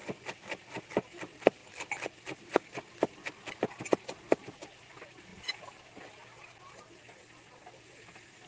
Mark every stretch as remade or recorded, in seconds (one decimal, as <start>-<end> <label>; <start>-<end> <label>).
0.0-1.6 recorded; 1.6-3.8 remade; 3.8-8.5 recorded

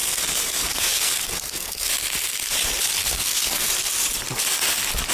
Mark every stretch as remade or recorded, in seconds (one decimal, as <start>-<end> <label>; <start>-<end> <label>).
0.0-1.9 remade; 1.9-3.0 recorded; 3.0-3.7 remade; 3.7-5.1 recorded

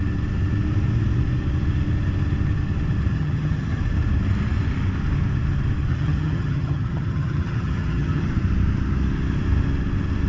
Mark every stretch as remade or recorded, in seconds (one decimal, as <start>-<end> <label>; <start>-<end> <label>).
0.0-3.1 recorded; 3.1-3.8 remade; 3.8-5.9 recorded; 5.9-8.3 remade; 8.3-10.3 recorded

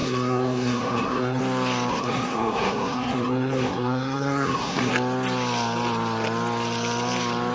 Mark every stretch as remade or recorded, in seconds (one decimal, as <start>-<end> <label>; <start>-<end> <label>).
0.0-1.4 remade; 1.4-1.9 recorded; 1.9-4.9 remade; 4.9-7.5 recorded

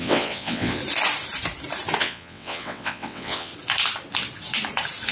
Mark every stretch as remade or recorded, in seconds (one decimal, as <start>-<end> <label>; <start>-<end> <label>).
0.0-0.8 remade; 0.8-2.0 recorded; 2.0-3.5 remade; 3.5-5.1 recorded

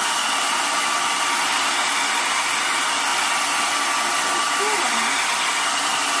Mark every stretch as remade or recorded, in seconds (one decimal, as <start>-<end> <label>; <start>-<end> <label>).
0.0-6.2 remade

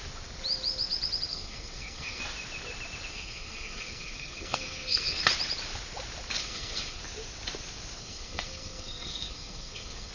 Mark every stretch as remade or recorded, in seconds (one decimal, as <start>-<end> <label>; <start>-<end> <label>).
0.0-1.3 recorded; 1.3-2.2 remade; 2.2-3.1 recorded; 3.1-5.2 remade; 5.2-6.4 recorded; 6.4-7.0 remade; 7.0-8.0 recorded; 8.0-10.1 remade

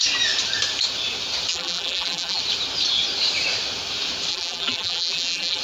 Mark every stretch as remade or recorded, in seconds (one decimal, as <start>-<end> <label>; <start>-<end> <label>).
0.0-1.5 recorded; 1.5-2.4 remade; 2.4-4.3 recorded; 4.3-5.6 remade